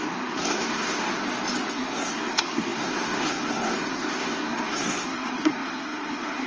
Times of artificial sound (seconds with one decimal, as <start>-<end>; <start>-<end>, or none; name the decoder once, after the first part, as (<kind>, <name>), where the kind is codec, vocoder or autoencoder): 0.0-1.2 (codec, SNAC); 1.7-6.5

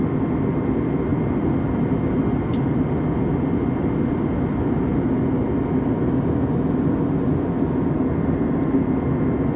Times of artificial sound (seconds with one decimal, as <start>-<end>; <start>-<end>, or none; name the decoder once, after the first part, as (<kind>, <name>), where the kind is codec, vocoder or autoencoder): none

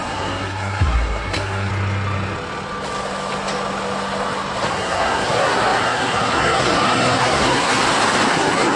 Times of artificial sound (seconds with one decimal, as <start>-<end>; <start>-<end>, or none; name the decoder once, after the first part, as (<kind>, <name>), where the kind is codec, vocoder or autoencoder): 0.0-1.7 (codec, SNAC); 4.7-7.8; 8.3-8.8

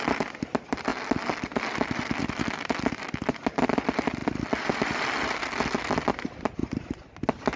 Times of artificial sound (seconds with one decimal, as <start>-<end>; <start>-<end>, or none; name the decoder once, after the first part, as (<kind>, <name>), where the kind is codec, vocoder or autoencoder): none

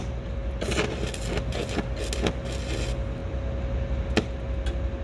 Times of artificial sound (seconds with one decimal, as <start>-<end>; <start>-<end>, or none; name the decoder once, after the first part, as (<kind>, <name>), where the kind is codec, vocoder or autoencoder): none